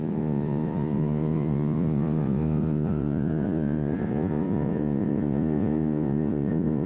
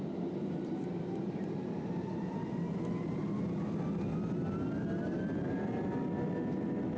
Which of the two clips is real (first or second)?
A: second